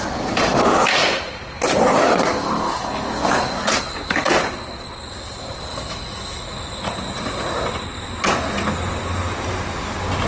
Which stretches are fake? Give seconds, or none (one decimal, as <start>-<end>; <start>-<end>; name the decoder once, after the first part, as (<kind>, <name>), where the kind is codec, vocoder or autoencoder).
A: 5.7-6.8 (autoencoder, DAC-VAE)